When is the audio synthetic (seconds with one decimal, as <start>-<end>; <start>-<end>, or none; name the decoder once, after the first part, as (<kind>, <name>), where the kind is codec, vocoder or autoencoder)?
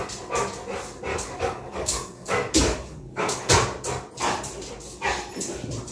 1.1-3.5 (codec, DAC)